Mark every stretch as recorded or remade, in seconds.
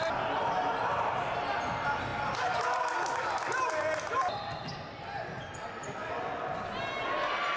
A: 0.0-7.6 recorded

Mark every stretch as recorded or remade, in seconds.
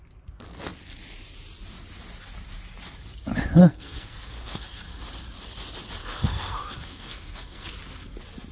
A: 0.0-3.6 recorded; 3.6-5.0 remade; 5.0-6.0 recorded; 6.0-7.7 remade; 7.7-8.5 recorded